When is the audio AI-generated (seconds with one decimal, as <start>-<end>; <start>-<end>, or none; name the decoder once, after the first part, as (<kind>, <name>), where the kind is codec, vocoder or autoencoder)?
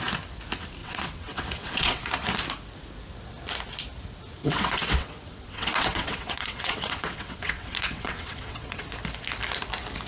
0.8-2.0 (vocoder, WaveNeXt); 4.4-8.8